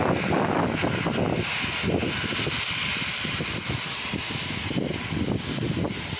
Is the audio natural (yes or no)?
yes